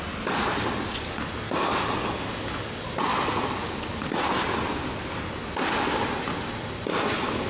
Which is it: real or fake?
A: real